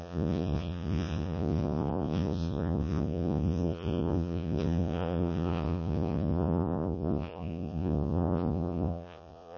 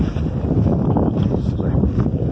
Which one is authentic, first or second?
second